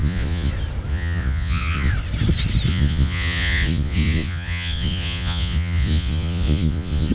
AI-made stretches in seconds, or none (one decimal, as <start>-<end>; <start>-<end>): 0.0-0.5; 0.9-1.9; 2.7-7.1